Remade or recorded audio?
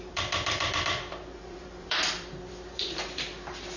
remade